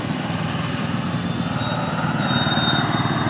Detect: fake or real real